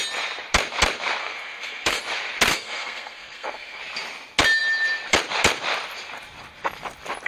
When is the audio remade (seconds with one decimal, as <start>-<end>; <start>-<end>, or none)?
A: 1.2-2.0; 2.5-3.8